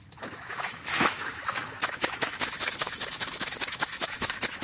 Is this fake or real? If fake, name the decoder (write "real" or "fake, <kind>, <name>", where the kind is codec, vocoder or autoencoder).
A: fake, autoencoder, DAC-VAE